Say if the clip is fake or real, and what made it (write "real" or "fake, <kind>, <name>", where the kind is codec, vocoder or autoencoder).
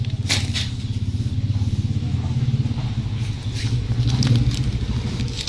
real